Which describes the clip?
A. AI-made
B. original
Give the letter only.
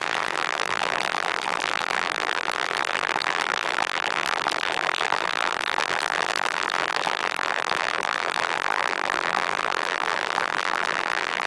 A